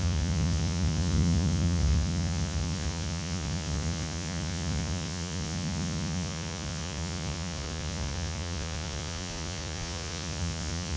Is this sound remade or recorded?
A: remade